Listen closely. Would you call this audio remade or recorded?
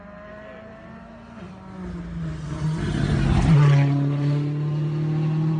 recorded